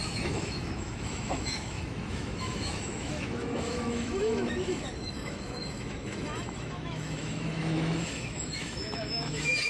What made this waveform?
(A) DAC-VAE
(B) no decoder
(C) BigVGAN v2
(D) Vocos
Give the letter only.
A